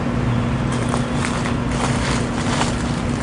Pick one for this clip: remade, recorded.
remade